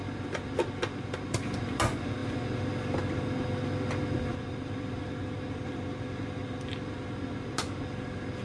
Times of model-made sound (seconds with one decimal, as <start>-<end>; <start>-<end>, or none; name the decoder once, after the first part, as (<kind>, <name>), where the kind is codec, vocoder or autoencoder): none